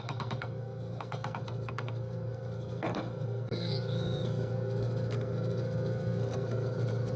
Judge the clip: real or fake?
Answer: fake